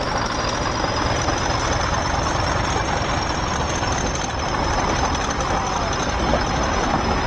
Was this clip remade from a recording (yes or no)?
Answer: no